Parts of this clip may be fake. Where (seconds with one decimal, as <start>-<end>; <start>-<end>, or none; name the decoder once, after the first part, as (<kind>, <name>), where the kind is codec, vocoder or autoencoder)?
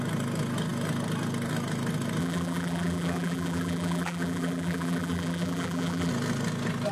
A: 2.2-6.1 (vocoder, BigVGAN v2)